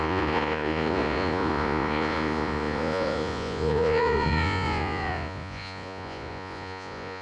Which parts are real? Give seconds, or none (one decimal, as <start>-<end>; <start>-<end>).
none